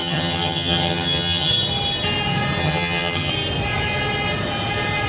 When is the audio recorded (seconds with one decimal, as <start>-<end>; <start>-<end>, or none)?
1.5-2.6; 3.3-5.1